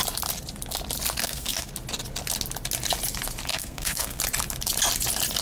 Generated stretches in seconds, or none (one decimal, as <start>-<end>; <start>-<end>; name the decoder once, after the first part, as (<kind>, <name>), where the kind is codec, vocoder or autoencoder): 1.2-1.7 (codec, SNAC); 3.5-4.2